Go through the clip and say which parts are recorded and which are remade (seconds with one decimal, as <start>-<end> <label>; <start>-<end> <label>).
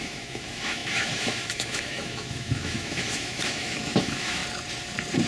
0.0-4.4 remade; 4.4-5.3 recorded